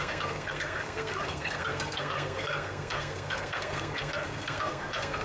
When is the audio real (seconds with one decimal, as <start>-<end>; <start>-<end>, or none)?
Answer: none

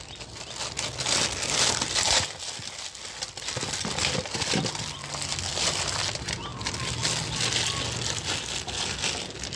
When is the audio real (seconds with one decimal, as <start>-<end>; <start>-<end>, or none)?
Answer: 0.0-9.6

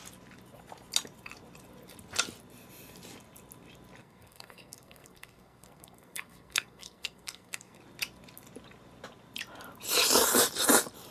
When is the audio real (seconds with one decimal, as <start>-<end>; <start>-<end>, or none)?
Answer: 0.0-4.0; 7.8-11.1

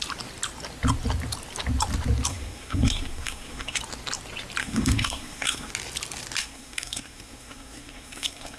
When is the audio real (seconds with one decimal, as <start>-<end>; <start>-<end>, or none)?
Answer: 0.0-2.3; 3.8-4.6; 5.7-6.4